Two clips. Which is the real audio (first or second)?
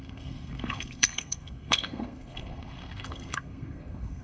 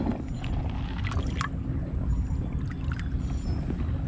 second